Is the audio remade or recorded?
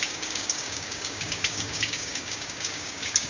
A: remade